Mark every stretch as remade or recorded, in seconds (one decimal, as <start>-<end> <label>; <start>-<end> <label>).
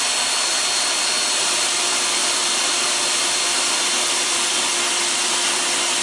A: 0.0-2.2 recorded; 2.2-4.1 remade; 4.1-6.0 recorded